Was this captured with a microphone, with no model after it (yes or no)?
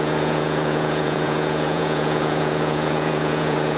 no